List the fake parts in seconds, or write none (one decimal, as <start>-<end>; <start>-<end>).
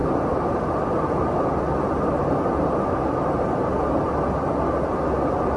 none